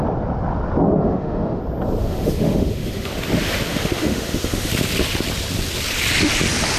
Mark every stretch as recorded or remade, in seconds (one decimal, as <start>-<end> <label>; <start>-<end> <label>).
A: 0.0-1.0 recorded; 1.0-1.6 remade; 1.6-2.0 recorded; 2.0-3.1 remade; 3.1-3.7 recorded; 3.7-4.7 remade; 4.7-6.8 recorded